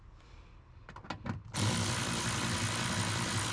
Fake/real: real